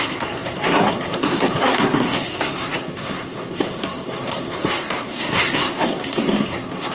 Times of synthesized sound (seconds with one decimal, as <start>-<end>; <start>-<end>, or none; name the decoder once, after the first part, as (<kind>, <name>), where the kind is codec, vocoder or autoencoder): 0.0-6.9 (codec, SNAC)